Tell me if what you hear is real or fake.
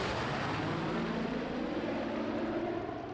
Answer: real